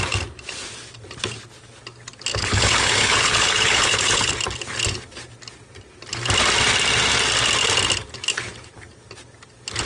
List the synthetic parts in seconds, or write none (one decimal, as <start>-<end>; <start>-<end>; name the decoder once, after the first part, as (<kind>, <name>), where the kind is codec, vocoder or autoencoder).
2.3-4.3 (codec, HILCodec)